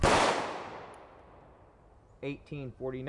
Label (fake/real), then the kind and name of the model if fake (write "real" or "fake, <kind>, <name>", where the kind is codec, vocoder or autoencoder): real